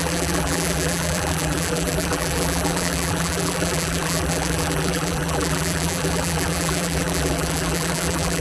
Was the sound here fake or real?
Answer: fake